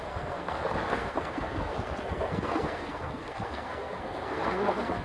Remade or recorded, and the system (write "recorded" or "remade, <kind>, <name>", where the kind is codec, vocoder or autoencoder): remade, codec, SNAC